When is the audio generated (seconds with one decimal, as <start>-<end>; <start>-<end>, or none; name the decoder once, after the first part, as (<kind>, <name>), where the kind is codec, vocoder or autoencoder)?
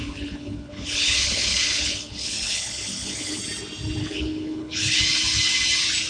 0.0-3.4 (codec, HILCodec); 4.0-5.0